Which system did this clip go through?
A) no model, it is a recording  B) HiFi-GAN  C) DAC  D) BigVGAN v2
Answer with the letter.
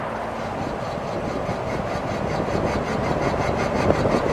A